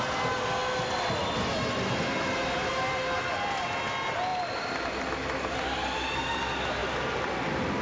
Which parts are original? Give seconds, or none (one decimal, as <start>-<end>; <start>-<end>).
0.0-7.8